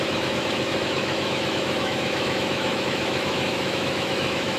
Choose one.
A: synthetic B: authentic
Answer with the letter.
A